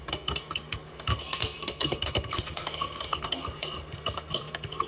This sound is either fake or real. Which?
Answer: fake